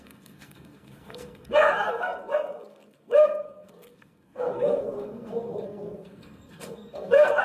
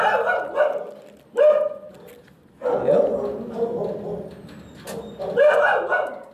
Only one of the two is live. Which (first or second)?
second